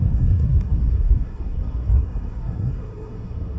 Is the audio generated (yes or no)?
yes